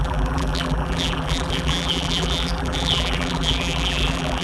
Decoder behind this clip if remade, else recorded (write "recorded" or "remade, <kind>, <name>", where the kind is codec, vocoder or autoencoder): remade, vocoder, BigVGAN v2